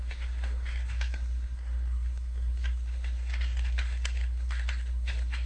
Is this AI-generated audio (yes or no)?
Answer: yes